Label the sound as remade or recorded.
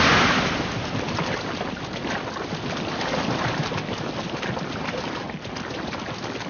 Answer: recorded